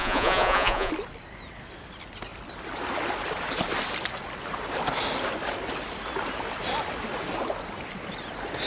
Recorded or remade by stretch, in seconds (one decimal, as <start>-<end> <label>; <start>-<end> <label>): 0.0-0.9 remade; 0.9-8.7 recorded